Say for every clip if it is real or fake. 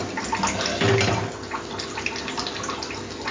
real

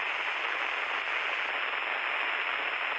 real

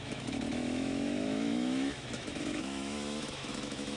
fake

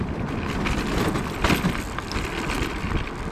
real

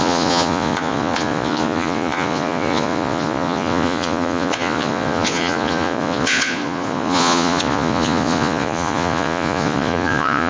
fake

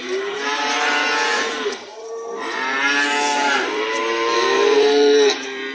fake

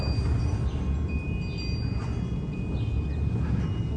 real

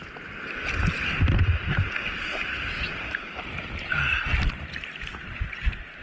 real